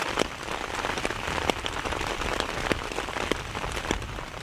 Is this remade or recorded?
recorded